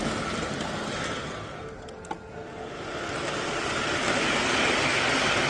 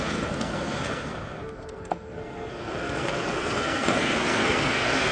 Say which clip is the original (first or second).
first